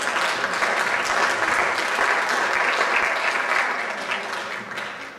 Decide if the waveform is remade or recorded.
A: recorded